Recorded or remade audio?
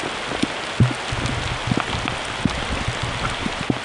recorded